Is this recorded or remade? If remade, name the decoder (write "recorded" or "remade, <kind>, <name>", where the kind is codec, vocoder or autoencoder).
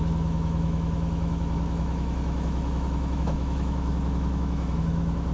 remade, autoencoder, DAC-VAE